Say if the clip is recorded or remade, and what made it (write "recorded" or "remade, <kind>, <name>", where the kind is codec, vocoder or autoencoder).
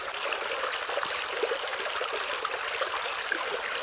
recorded